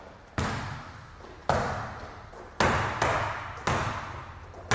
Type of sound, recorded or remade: recorded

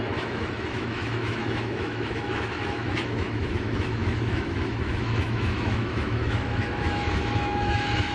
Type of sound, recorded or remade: remade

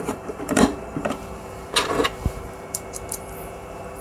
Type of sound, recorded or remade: remade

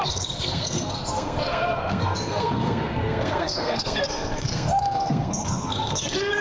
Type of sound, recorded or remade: remade